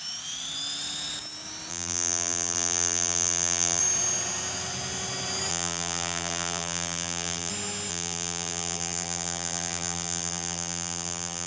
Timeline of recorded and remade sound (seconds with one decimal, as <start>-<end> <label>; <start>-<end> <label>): 0.0-1.7 recorded; 1.7-3.8 remade; 3.8-5.5 recorded; 5.5-7.5 remade; 7.5-7.9 recorded; 7.9-11.5 remade